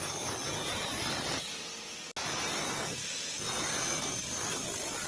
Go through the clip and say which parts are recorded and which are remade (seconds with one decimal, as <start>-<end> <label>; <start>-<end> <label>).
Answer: 0.0-5.1 recorded